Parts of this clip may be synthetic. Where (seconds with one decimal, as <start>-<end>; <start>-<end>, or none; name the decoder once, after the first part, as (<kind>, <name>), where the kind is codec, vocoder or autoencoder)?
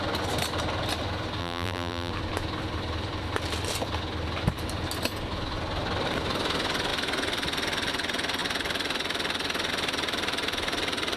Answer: 1.4-2.1 (vocoder, BigVGAN v2)